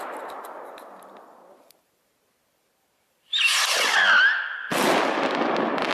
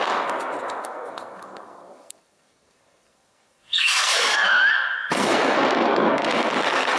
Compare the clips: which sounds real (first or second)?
first